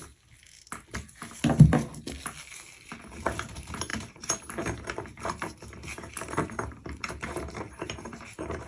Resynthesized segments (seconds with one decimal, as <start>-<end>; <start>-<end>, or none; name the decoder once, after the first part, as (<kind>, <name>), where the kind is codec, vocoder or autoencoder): 3.0-8.7 (vocoder, BigVGAN v2)